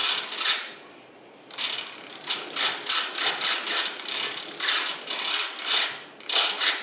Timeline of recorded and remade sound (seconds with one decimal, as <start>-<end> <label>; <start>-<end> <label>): 0.0-6.8 recorded